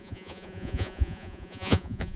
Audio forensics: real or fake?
fake